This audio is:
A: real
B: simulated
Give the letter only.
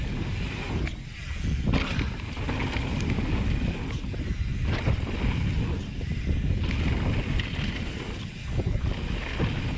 A